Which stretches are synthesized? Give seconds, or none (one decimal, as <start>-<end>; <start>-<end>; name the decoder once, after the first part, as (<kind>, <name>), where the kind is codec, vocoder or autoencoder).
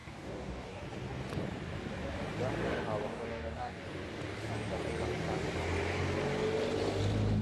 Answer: 0.0-0.8 (codec, DAC); 3.1-3.8